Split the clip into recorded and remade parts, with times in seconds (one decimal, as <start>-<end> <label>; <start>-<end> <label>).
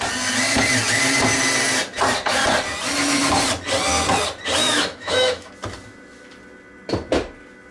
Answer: 0.0-4.6 recorded; 4.6-5.5 remade; 5.5-7.7 recorded